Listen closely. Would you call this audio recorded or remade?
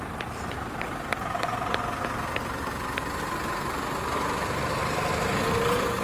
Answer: recorded